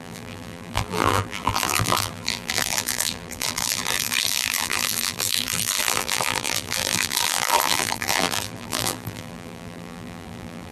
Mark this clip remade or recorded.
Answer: remade